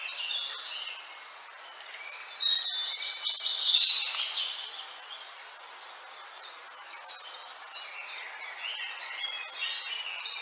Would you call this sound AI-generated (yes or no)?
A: no